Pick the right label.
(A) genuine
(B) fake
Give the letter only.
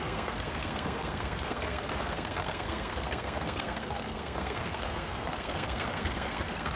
B